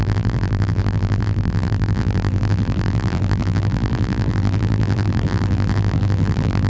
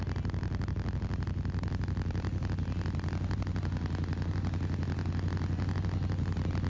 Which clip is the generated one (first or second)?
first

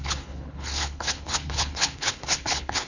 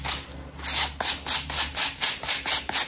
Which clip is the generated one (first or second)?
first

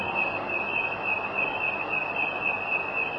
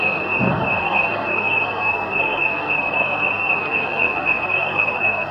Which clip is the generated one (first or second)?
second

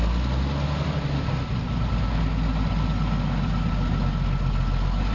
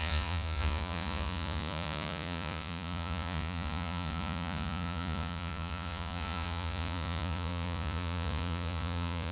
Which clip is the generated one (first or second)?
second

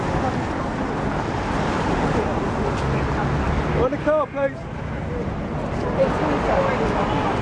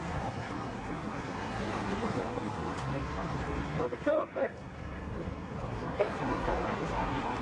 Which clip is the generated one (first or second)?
second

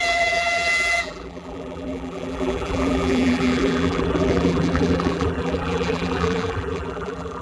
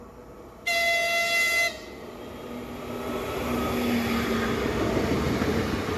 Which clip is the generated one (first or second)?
first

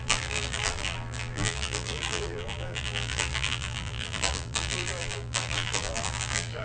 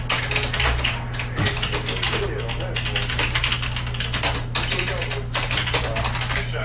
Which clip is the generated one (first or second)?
first